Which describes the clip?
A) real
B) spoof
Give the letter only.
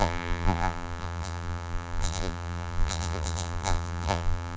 B